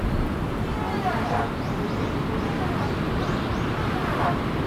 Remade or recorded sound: recorded